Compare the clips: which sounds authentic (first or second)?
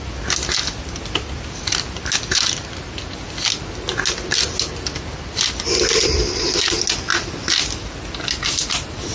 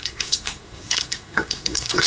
first